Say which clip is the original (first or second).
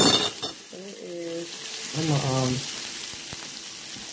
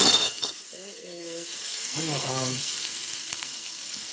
first